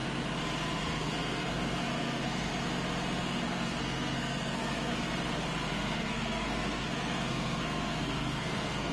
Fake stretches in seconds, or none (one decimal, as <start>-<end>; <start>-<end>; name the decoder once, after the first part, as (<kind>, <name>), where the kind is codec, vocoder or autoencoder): 0.8-2.5 (codec, SNAC); 3.2-4.9; 5.7-8.9